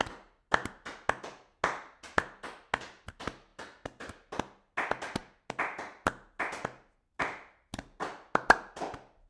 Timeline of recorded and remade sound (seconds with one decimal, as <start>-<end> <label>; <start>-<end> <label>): 0.0-9.3 recorded